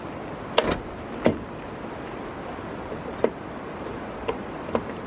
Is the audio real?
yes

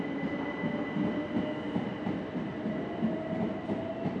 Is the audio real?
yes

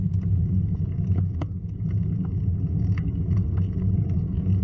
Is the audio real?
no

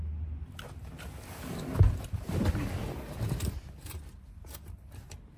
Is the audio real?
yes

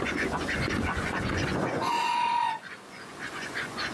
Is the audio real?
no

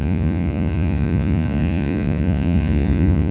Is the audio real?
no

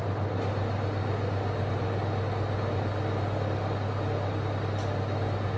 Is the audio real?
yes